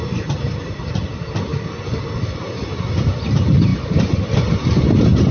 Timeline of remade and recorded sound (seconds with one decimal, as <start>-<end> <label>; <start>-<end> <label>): 0.0-5.3 recorded